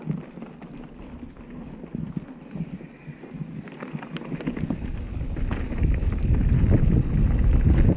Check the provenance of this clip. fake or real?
real